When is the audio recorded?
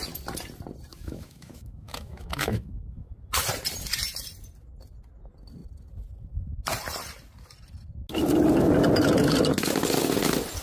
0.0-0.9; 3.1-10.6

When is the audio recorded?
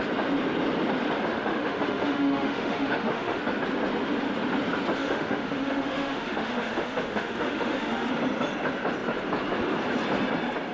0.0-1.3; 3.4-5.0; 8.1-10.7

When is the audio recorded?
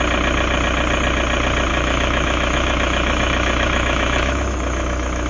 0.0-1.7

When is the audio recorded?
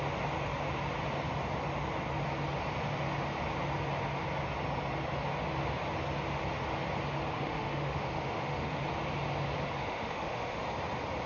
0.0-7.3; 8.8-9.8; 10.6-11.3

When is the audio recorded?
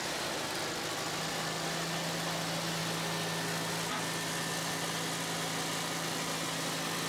0.0-7.1